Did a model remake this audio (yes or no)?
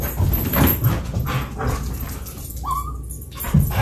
no